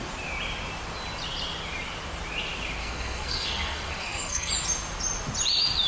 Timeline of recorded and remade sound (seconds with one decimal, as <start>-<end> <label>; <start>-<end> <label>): 0.0-2.8 recorded; 2.8-4.5 remade; 4.5-5.9 recorded